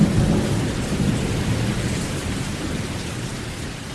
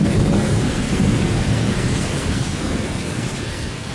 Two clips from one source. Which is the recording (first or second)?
first